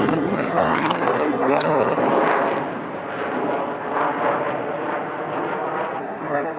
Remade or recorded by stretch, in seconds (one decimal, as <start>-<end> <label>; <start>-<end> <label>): 0.0-2.0 remade; 2.0-6.0 recorded; 6.0-6.6 remade